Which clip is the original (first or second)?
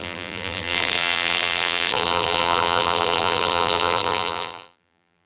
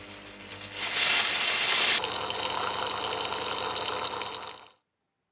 second